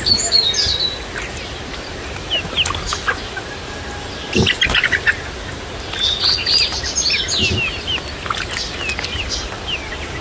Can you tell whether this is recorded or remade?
recorded